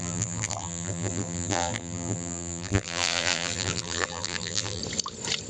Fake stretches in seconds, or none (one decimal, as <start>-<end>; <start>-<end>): 0.0-4.8